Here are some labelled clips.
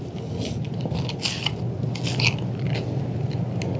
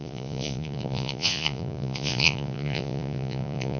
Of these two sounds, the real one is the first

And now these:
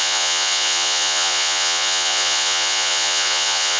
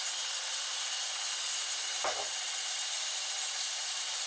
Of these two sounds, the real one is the second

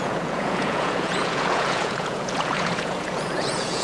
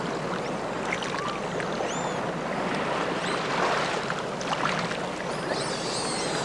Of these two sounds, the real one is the second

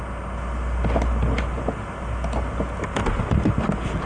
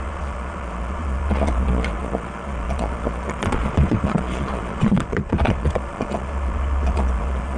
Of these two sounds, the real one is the first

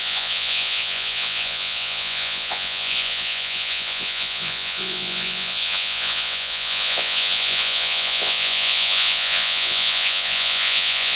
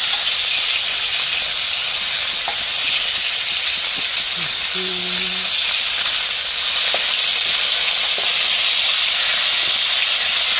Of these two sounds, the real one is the second